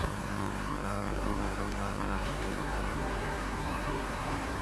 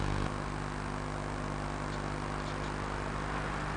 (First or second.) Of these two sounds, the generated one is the first